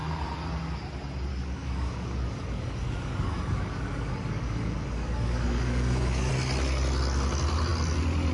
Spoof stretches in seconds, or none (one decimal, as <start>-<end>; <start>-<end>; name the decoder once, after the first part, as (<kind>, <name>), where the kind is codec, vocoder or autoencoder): 1.3-6.3 (codec, DAC)